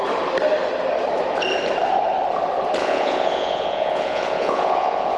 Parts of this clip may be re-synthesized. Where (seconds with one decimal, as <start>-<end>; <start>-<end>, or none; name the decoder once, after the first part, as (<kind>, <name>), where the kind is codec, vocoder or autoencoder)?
2.8-5.2 (vocoder, Vocos)